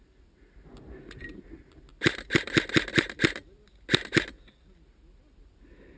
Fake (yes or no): no